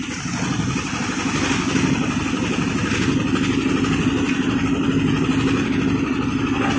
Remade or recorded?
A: recorded